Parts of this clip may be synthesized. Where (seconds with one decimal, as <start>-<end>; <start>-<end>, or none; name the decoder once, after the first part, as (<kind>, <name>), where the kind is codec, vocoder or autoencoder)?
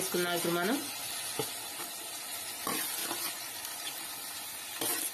3.0-3.7 (vocoder, BigVGAN v2)